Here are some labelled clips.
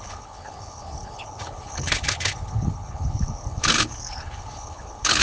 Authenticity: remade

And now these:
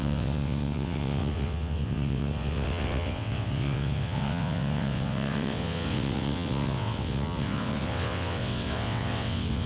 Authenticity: remade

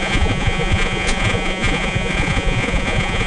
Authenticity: remade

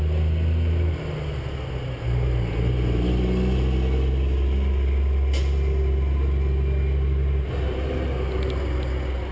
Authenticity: recorded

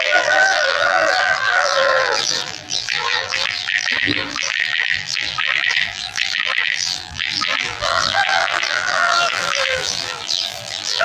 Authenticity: remade